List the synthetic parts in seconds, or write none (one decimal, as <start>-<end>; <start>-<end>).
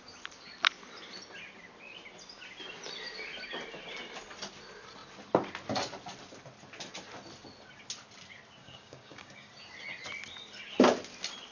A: 8.6-9.5